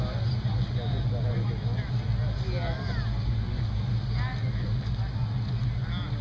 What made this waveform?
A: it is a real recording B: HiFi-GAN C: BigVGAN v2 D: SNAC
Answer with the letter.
A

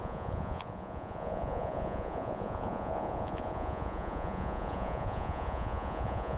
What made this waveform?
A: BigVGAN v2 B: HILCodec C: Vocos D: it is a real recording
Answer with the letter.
C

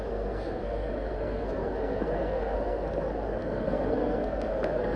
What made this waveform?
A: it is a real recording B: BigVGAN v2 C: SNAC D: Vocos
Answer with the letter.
C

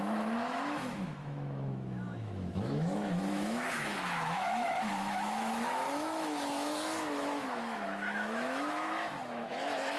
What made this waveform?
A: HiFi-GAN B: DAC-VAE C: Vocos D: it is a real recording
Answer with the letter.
B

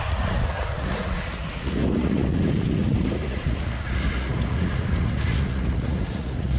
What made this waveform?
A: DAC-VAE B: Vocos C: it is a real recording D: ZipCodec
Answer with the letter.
B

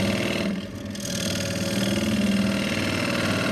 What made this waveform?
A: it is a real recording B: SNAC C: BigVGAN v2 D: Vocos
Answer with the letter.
A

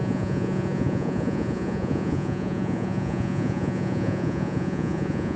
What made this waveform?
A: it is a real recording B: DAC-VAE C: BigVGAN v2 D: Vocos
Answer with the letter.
D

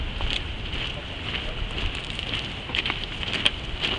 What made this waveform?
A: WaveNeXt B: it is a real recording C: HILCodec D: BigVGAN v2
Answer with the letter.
B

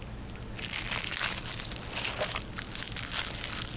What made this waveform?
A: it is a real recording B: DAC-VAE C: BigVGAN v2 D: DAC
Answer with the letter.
A